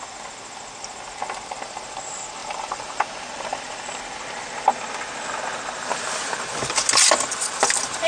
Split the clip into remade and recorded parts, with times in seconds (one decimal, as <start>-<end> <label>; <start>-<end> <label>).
0.0-2.4 recorded; 2.4-4.0 remade; 4.0-8.1 recorded